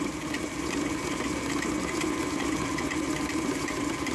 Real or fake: real